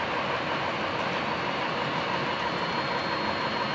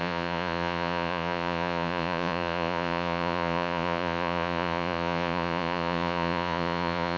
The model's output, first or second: second